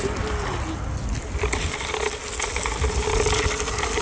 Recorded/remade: recorded